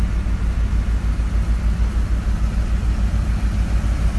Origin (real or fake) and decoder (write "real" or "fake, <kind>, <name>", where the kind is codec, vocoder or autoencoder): real